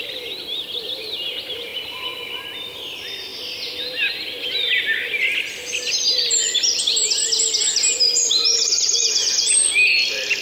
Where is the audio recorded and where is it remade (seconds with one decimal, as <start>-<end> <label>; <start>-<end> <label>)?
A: 0.0-10.4 recorded